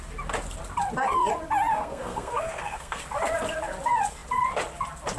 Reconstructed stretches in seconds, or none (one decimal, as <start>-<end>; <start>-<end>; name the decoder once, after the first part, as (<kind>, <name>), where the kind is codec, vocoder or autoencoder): 1.7-3.0 (codec, SNAC)